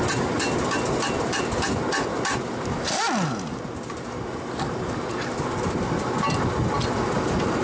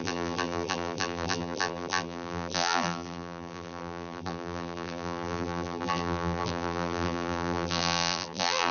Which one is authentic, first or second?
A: first